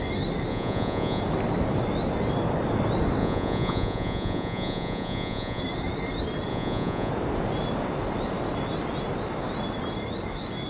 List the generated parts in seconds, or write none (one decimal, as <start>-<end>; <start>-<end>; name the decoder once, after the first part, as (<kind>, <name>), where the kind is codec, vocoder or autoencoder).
0.5-1.2 (vocoder, Vocos); 3.2-5.6; 6.5-7.1